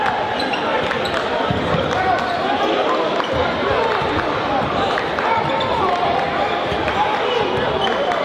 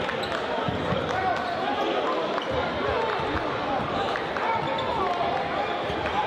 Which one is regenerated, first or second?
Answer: first